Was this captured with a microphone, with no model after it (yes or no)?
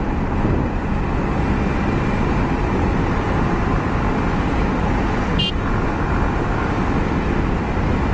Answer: yes